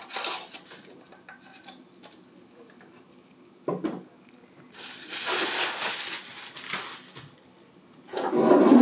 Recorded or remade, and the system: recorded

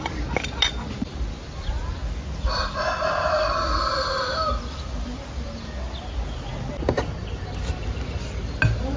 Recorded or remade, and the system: recorded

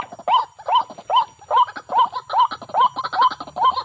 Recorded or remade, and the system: recorded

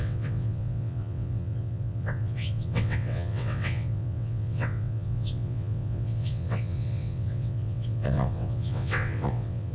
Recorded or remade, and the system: remade, vocoder, WaveNeXt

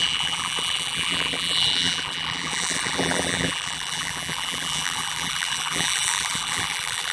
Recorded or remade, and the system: remade, vocoder, BigVGAN v2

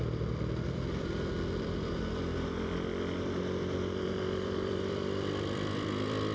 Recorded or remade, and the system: remade, vocoder, BigVGAN v2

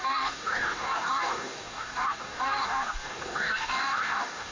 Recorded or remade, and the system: remade, codec, DAC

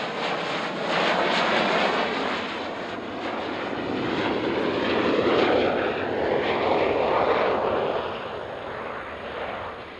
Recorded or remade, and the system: recorded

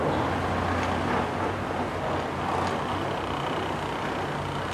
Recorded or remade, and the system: recorded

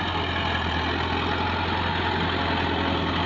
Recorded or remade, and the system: recorded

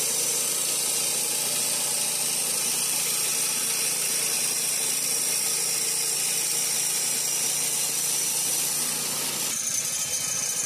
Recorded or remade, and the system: recorded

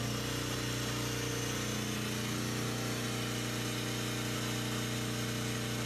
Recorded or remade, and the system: recorded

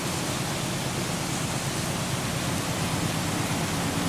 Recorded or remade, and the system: recorded